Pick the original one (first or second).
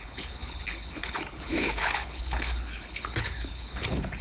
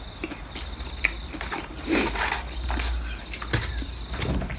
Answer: second